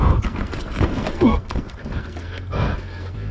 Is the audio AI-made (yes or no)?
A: yes